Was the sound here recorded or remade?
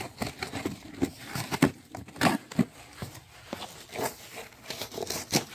recorded